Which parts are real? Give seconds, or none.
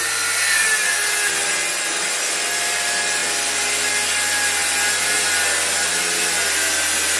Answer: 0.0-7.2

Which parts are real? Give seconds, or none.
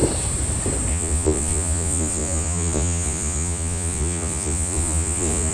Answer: 0.0-0.9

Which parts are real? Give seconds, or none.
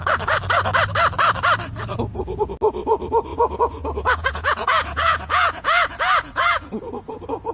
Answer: 0.0-3.3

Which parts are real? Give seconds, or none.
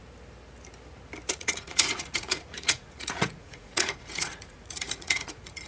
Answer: 0.0-1.3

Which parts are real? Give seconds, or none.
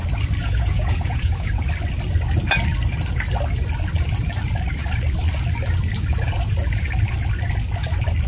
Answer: 0.0-0.4; 1.5-8.3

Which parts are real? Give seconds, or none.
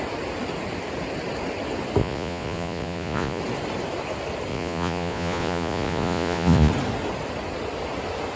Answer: 0.0-2.0; 3.4-4.5; 6.7-8.4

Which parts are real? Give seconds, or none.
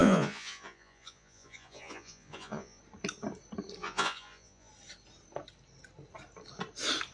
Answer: 2.8-3.8; 4.7-7.1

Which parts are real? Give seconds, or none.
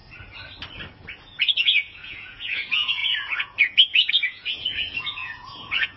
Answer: 0.0-1.2